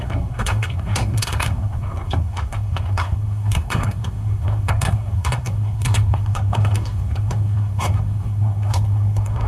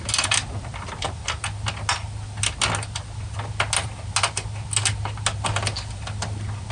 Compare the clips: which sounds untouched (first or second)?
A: second